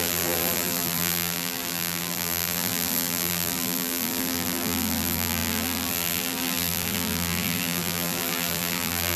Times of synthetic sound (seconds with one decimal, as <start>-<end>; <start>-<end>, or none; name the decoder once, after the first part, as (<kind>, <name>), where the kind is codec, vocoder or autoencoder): 0.0-9.2 (vocoder, BigVGAN v2)